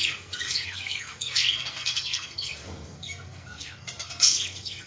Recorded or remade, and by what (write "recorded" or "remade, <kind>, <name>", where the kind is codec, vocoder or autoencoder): remade, codec, SNAC